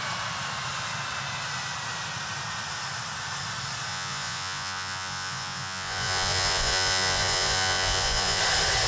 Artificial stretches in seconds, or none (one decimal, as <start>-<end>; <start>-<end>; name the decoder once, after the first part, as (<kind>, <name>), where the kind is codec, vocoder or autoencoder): 3.9-8.4 (vocoder, Vocos)